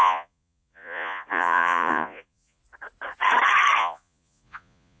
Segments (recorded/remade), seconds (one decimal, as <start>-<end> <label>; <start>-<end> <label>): 0.0-2.6 remade; 2.6-3.8 recorded; 3.8-5.0 remade